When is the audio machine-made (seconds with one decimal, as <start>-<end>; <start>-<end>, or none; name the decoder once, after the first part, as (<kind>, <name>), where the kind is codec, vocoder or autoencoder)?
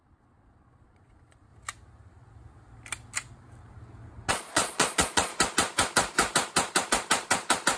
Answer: 0.0-1.5 (vocoder, Vocos); 4.3-5.3